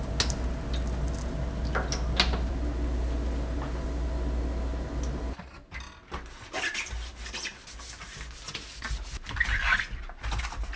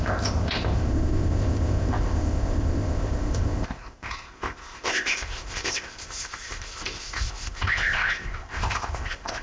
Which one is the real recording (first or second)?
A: first